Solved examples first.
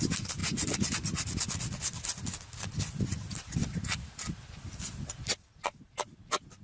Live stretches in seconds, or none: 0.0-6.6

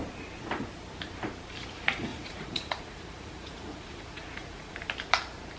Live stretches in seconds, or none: 0.0-2.1; 4.7-5.6

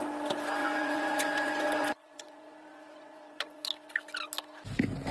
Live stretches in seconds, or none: 0.0-0.6; 3.7-5.1

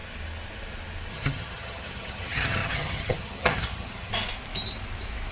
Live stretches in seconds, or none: 0.0-1.1; 4.1-5.3

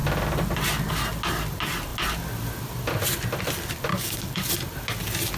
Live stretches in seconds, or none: 0.0-3.9; 4.5-5.4